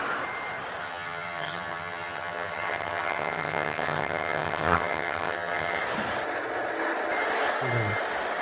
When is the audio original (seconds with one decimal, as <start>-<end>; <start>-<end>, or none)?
0.0-0.8; 5.8-8.4